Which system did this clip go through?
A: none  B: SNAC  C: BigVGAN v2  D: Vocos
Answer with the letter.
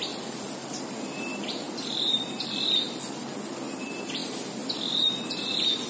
C